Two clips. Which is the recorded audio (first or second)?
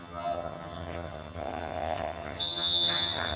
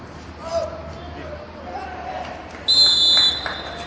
second